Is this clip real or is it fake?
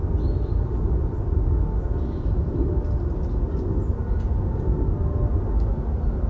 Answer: real